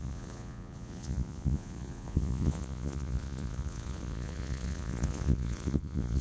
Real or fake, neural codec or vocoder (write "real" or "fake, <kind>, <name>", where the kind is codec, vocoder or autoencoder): fake, vocoder, Vocos